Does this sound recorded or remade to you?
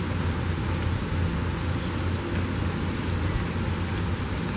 recorded